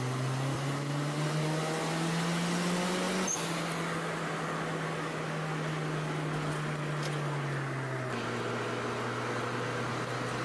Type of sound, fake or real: real